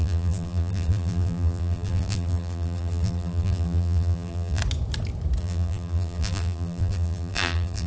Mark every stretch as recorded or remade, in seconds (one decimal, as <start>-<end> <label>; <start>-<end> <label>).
0.0-4.6 remade; 4.6-5.4 recorded; 5.4-7.9 remade